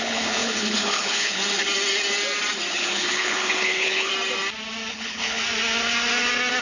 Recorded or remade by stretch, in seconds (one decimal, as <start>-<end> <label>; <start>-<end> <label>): 0.0-1.4 remade; 1.4-2.7 recorded; 2.7-4.1 remade; 4.1-4.9 recorded; 4.9-5.4 remade; 5.4-6.6 recorded

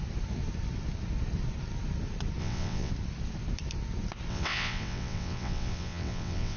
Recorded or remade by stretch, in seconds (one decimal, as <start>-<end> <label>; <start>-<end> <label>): 0.0-2.4 recorded; 2.4-2.9 remade; 2.9-4.3 recorded; 4.3-6.6 remade

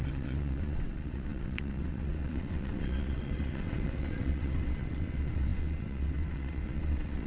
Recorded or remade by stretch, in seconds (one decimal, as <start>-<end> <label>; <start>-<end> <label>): 0.0-7.3 remade

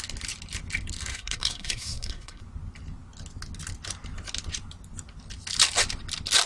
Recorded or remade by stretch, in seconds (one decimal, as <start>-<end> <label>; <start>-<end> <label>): 0.0-1.1 recorded; 1.1-2.4 remade; 2.4-6.5 recorded

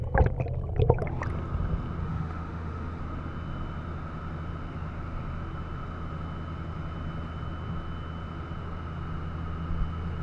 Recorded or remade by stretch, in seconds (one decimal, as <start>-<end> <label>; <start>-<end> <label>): 0.0-2.0 recorded; 2.0-3.0 remade; 3.0-10.2 recorded

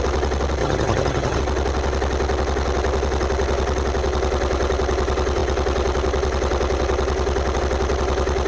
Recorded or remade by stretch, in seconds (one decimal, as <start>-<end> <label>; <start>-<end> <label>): 0.0-0.6 recorded; 0.6-1.4 remade; 1.4-8.5 recorded